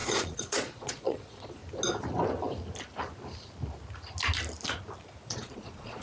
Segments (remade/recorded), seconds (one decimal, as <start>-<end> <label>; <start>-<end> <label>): 0.0-1.6 remade; 1.6-5.2 recorded; 5.2-6.0 remade

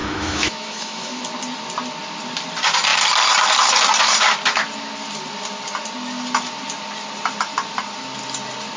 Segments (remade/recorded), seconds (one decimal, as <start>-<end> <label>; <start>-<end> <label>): 0.0-1.2 remade; 1.2-8.8 recorded

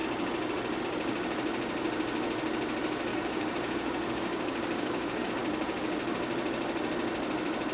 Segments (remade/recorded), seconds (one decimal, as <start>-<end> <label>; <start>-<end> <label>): 0.0-3.1 recorded; 3.1-5.3 remade; 5.3-7.7 recorded

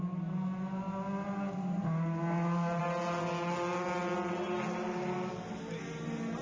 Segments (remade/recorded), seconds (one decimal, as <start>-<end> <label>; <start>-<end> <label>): 0.0-6.4 recorded

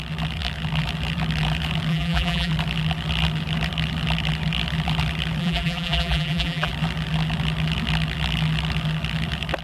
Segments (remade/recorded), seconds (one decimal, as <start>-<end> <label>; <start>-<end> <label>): 0.0-1.9 recorded; 1.9-2.5 remade; 2.5-5.4 recorded; 5.4-6.7 remade; 6.7-9.6 recorded

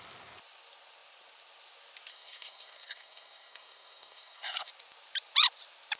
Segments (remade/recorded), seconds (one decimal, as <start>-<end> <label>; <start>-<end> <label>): 0.0-2.1 recorded; 2.1-4.7 remade; 4.7-6.0 recorded

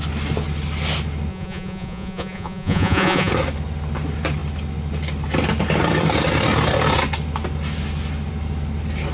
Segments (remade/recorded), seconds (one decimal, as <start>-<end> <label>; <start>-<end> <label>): 0.0-1.3 recorded; 1.3-3.3 remade; 3.3-9.1 recorded